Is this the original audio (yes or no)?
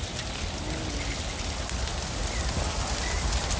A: yes